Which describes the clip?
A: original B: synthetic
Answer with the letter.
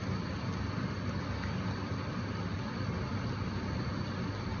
A